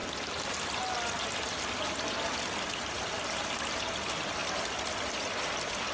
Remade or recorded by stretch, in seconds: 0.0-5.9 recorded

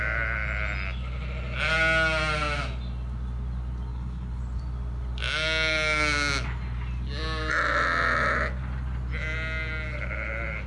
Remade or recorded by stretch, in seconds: 0.0-3.9 recorded; 3.9-4.4 remade; 4.4-10.7 recorded

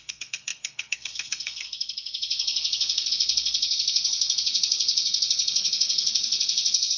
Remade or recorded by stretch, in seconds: 0.0-7.0 remade

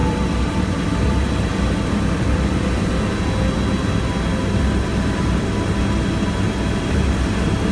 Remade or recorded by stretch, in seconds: 0.0-0.9 remade; 0.9-1.5 recorded; 1.5-2.9 remade; 2.9-4.9 recorded; 4.9-5.8 remade; 5.8-7.7 recorded

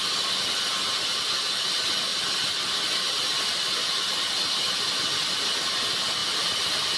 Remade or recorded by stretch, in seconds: 0.0-7.0 recorded

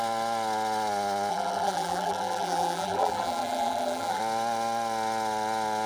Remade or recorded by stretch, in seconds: 0.0-1.3 recorded; 1.3-4.2 remade; 4.2-5.9 recorded

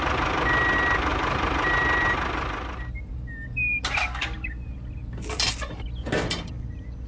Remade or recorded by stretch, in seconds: 0.0-7.1 recorded